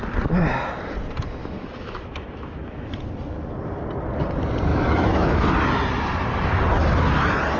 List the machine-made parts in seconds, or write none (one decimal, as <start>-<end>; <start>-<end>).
1.4-2.9; 4.7-5.4